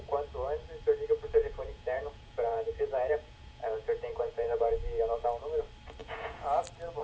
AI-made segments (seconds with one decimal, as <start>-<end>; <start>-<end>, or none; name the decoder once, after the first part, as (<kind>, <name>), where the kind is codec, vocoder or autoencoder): 1.4-5.0 (vocoder, Vocos); 6.0-6.6